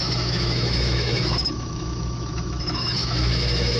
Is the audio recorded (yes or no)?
no